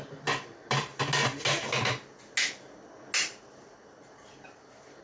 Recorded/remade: recorded